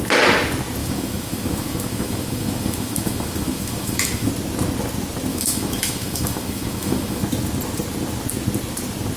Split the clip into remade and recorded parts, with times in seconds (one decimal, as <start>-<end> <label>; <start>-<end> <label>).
0.0-0.8 recorded; 0.8-4.3 remade; 4.3-5.3 recorded; 5.3-7.2 remade; 7.2-9.2 recorded